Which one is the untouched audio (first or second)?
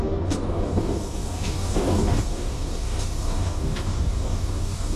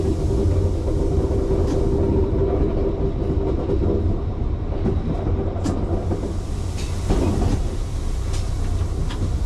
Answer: second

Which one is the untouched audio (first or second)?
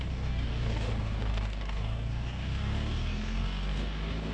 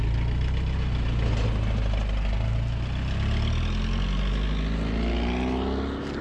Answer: second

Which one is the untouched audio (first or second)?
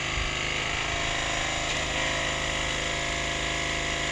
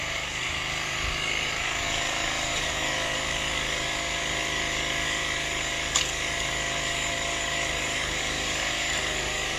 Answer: first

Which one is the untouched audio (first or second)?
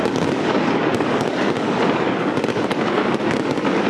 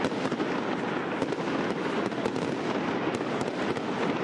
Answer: second